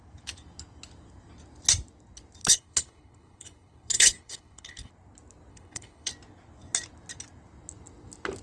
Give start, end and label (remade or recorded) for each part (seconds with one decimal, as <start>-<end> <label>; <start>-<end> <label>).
0.0-2.4 recorded; 2.4-4.9 remade; 4.9-5.5 recorded; 5.5-6.1 remade; 6.1-8.4 recorded